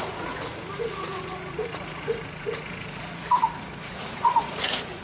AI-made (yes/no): yes